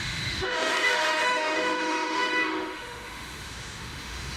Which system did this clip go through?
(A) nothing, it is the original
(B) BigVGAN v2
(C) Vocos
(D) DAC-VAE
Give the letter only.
D